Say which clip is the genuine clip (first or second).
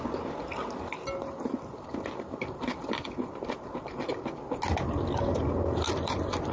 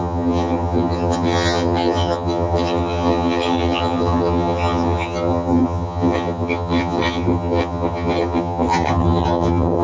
first